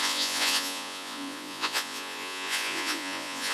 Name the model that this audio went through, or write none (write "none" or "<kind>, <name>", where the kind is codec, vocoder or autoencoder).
vocoder, Vocos